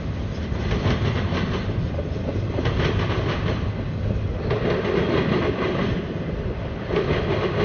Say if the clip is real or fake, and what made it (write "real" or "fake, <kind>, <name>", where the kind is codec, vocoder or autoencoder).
real